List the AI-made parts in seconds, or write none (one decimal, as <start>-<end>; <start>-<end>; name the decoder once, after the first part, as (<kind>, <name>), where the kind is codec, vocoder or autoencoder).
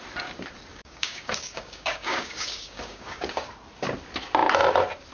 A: 0.7-3.5 (codec, DAC)